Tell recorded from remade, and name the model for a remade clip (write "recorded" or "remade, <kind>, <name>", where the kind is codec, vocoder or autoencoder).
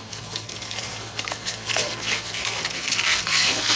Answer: remade, codec, SNAC